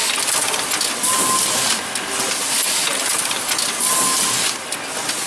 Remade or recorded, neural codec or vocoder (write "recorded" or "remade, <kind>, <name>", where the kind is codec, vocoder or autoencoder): recorded